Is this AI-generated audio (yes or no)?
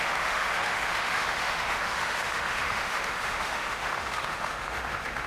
yes